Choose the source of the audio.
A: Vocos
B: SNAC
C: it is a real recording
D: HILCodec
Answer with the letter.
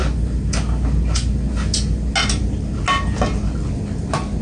C